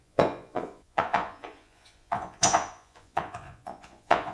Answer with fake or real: fake